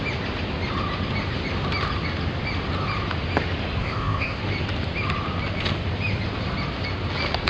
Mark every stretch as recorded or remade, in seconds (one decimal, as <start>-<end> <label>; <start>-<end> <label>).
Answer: 0.0-3.8 recorded; 3.8-4.4 remade; 4.4-7.5 recorded